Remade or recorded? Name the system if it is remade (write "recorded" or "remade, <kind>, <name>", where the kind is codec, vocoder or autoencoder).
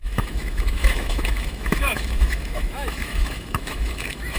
remade, autoencoder, DAC-VAE